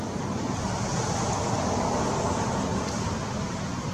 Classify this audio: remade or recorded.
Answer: recorded